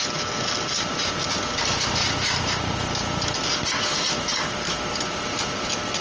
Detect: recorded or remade recorded